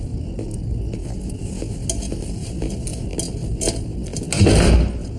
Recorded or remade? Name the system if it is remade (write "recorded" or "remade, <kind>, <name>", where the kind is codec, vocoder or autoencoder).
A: recorded